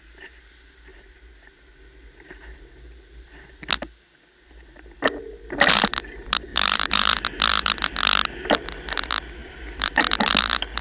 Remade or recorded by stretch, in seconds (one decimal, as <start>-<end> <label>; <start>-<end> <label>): 0.0-6.5 recorded; 6.5-7.1 remade; 7.1-7.5 recorded; 7.5-8.0 remade; 8.0-9.4 recorded; 9.4-10.3 remade; 10.3-10.8 recorded